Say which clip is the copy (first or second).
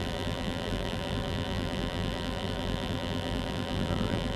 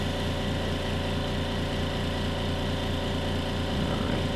first